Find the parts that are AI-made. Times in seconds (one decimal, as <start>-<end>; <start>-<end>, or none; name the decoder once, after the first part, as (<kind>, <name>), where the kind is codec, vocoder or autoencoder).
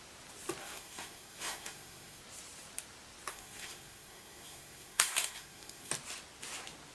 0.6-2.2 (codec, SNAC); 3.3-5.9